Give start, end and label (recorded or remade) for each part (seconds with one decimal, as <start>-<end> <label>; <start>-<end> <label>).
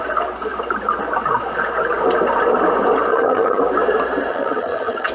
0.0-3.1 recorded; 3.1-3.6 remade; 3.6-4.3 recorded; 4.3-5.1 remade